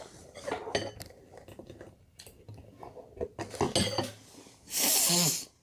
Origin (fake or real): real